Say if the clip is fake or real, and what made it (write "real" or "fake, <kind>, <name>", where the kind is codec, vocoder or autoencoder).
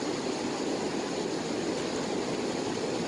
real